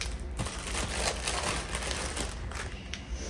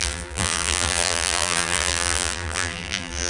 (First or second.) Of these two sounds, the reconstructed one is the second